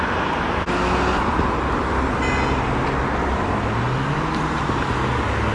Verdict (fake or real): real